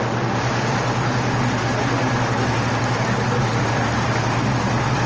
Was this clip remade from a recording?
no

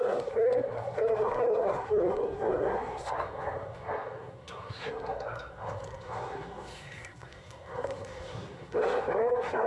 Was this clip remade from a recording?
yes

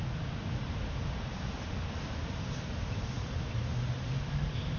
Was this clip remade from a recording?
no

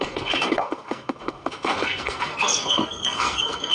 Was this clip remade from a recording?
yes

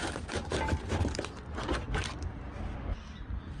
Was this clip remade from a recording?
no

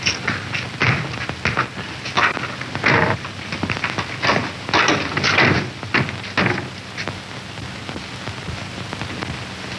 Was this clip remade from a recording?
no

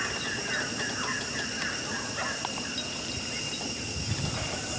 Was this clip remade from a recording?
no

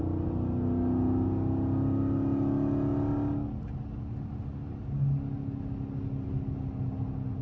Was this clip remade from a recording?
no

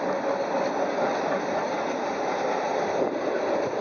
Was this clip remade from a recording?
no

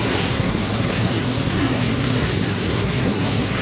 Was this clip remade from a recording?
yes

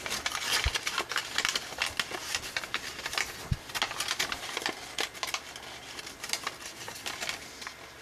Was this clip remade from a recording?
no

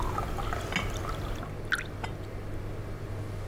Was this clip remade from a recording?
no